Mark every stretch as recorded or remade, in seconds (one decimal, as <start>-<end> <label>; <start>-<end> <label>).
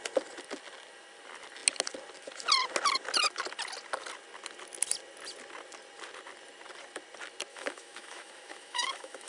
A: 0.0-7.5 recorded; 7.5-9.3 remade